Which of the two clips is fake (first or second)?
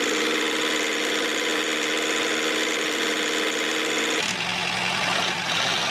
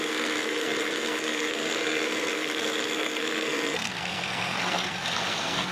second